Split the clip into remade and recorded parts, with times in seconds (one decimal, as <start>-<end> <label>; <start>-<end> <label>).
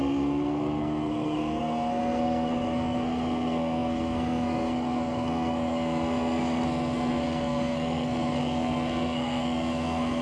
0.0-10.2 remade